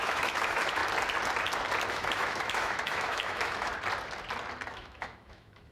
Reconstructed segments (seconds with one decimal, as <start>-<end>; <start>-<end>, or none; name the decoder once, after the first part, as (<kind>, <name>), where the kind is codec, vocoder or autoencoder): 0.0-0.8 (autoencoder, DAC-VAE); 1.9-3.7; 4.7-5.7